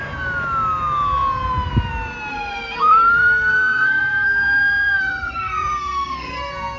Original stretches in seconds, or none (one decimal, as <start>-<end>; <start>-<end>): 0.0-2.3